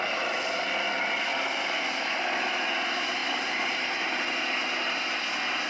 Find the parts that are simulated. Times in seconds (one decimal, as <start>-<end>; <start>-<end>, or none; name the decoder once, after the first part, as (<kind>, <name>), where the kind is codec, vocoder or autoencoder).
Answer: 1.3-1.8 (vocoder, BigVGAN v2)